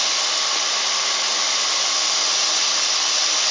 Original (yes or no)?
yes